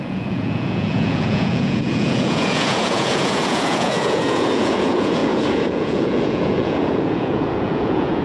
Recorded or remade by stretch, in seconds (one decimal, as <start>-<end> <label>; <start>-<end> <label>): 0.0-8.2 remade